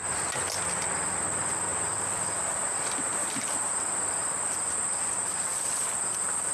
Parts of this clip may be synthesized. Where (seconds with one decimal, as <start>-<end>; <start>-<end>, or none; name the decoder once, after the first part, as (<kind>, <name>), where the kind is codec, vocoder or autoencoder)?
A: 1.7-2.5 (vocoder, BigVGAN v2); 5.5-6.5